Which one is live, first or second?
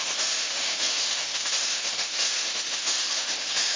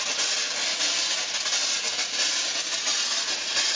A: second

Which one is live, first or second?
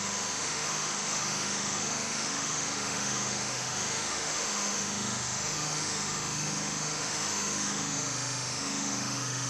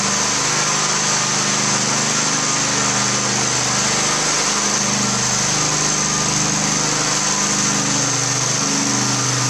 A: second